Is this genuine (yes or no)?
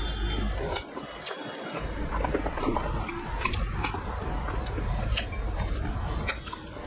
yes